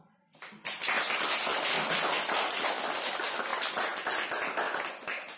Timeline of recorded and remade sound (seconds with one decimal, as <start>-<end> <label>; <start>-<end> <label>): 0.0-5.4 recorded